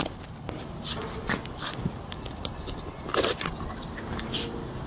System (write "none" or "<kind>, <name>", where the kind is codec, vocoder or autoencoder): none